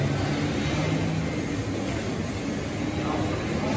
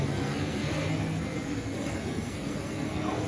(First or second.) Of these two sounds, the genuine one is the first